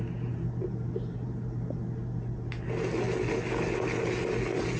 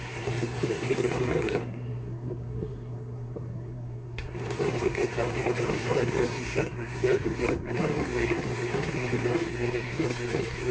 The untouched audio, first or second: first